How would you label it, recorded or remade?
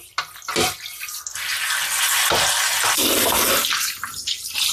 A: recorded